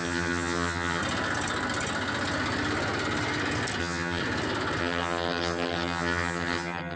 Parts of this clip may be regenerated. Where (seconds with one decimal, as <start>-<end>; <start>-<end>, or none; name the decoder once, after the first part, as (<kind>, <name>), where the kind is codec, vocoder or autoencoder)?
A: 0.0-1.0 (vocoder, HiFi-GAN); 3.8-4.2; 4.8-7.0